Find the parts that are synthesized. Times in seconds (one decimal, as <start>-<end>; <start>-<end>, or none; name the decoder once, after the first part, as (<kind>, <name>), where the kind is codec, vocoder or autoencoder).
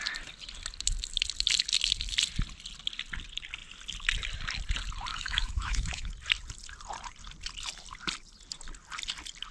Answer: 5.1-6.1 (autoencoder, DAC-VAE)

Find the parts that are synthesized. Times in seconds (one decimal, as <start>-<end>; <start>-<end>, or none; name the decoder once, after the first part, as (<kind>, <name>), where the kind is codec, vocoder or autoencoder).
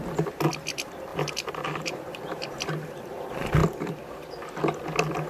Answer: 1.1-2.0 (vocoder, BigVGAN v2)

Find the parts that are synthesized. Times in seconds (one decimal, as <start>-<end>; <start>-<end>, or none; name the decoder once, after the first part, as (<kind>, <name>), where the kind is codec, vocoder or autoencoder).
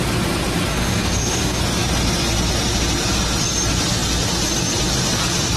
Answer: 0.7-1.6 (codec, DAC)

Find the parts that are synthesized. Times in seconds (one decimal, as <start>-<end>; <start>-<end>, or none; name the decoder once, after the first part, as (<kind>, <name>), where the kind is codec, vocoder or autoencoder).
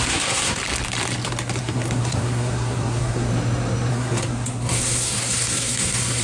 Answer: 0.0-0.6 (codec, SNAC); 1.6-3.3; 3.9-6.2